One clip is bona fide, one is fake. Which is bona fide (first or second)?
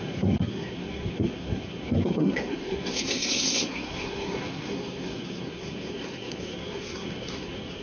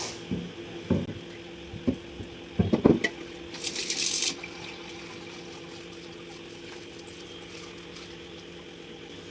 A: second